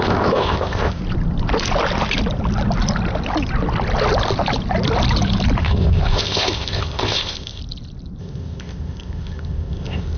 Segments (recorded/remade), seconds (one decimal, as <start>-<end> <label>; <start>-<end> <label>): 0.0-1.0 remade; 1.0-5.6 recorded; 5.6-7.6 remade; 7.6-8.2 recorded; 8.2-10.2 remade